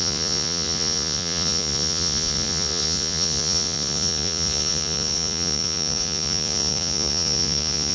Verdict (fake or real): fake